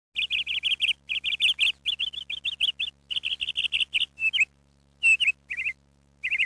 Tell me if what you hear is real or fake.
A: real